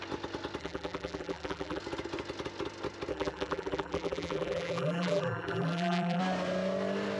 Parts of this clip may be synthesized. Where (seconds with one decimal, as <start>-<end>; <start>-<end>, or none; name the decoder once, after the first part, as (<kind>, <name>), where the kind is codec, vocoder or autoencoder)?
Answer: 0.6-1.8 (vocoder, BigVGAN v2); 3.1-6.2